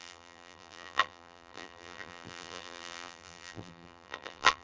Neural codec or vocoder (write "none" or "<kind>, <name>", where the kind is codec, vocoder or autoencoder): vocoder, BigVGAN v2